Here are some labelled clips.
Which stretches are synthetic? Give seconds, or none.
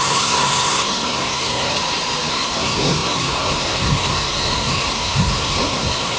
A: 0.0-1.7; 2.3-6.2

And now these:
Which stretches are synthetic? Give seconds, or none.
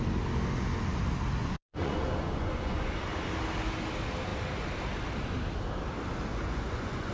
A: 1.4-2.9; 6.3-7.1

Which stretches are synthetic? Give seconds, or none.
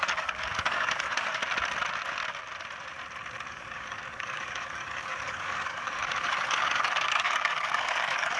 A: 0.0-1.4; 3.5-8.4